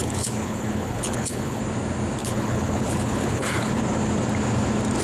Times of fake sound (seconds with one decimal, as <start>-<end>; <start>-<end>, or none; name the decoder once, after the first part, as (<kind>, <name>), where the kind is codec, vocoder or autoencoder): 0.0-1.6 (codec, HILCodec); 2.2-3.8

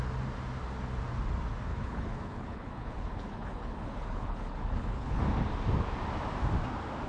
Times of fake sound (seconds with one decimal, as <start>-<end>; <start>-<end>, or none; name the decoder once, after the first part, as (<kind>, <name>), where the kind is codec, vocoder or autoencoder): 1.7-5.2 (codec, HILCodec)

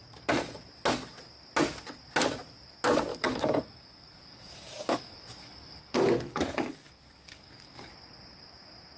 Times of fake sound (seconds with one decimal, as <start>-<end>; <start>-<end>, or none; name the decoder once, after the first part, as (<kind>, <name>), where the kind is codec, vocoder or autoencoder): 3.1-7.9 (codec, DAC)

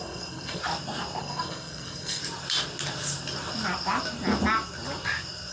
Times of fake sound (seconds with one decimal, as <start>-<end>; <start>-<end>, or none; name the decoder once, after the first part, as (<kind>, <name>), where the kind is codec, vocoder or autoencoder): 0.0-0.6 (codec, SNAC); 1.2-2.2

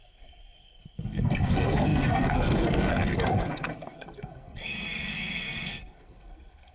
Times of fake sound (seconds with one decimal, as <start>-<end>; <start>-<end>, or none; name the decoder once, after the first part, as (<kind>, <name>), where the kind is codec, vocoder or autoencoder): 0.0-6.7 (codec, SNAC)